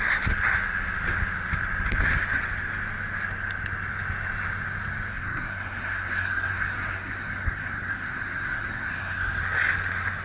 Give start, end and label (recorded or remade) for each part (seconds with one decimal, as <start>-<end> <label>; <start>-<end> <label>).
0.0-5.1 recorded; 5.1-9.4 remade; 9.4-10.2 recorded